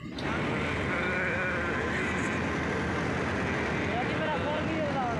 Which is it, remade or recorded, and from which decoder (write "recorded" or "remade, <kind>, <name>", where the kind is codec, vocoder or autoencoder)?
recorded